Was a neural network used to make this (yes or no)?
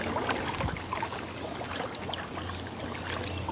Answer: no